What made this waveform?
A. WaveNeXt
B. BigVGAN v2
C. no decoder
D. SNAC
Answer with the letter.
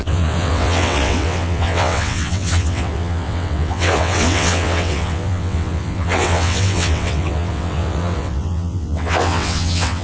A